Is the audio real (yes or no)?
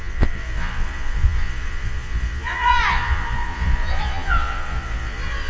no